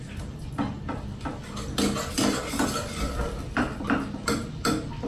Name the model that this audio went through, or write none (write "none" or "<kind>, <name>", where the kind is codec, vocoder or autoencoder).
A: none